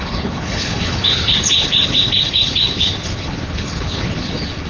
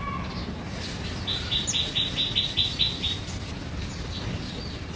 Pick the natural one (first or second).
second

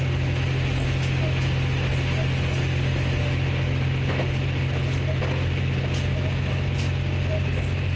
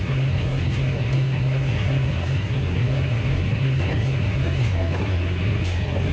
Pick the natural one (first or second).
first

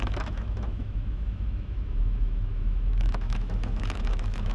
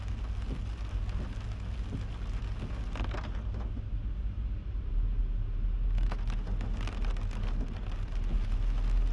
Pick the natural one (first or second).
second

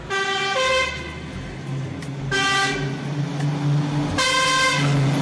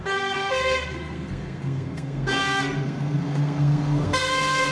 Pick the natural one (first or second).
first